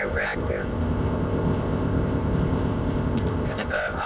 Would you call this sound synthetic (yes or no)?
yes